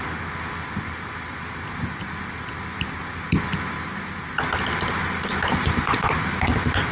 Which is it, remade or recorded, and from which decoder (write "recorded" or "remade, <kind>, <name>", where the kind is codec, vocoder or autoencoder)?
recorded